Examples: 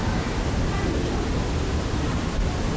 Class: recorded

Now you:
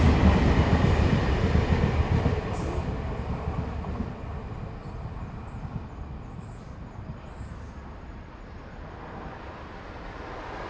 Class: recorded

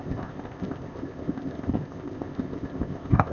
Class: remade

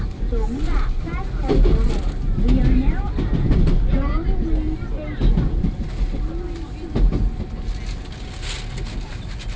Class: recorded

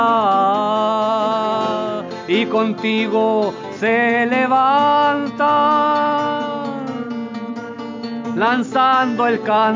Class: recorded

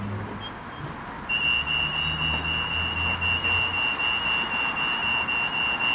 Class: recorded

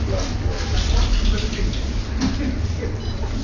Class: recorded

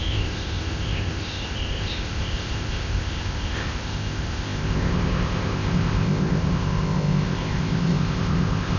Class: remade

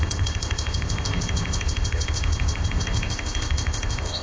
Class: remade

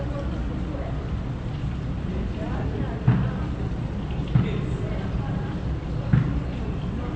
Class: recorded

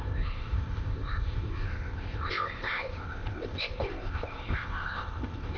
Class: remade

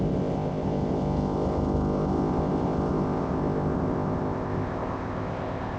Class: remade